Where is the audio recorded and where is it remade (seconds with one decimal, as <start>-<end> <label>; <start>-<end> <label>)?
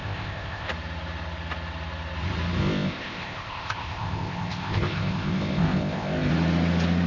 0.0-0.7 remade; 0.7-2.6 recorded; 2.6-6.3 remade; 6.3-7.1 recorded